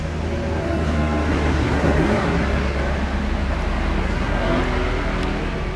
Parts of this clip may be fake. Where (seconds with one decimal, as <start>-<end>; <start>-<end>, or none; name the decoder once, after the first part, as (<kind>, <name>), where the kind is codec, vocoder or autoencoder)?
0.6-2.8 (codec, SNAC); 4.0-4.6